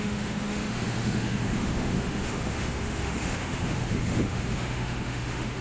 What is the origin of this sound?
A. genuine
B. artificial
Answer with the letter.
B